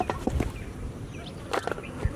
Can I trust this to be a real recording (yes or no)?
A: yes